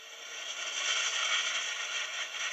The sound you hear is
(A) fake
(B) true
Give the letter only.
B